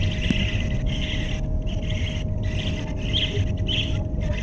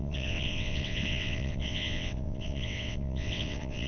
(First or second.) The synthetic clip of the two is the second